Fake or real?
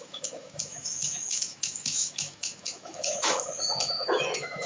fake